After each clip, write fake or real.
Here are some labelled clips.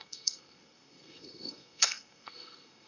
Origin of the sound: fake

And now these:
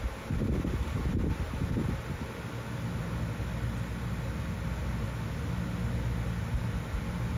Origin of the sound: real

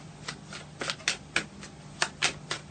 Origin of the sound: real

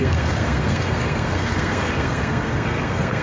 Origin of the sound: fake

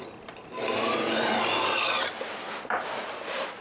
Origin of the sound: real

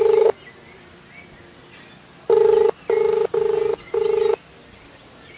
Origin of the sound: real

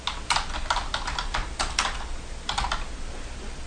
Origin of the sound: real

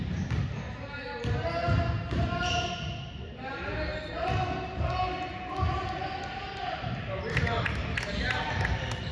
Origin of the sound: real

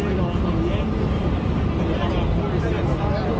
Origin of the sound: real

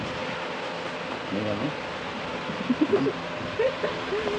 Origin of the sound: real